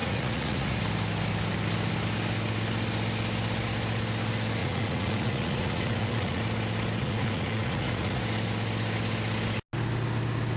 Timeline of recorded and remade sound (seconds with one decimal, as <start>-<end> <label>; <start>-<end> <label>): 0.0-0.8 remade; 0.8-4.6 recorded; 4.6-6.4 remade; 6.4-7.0 recorded; 7.0-8.2 remade; 8.2-10.6 recorded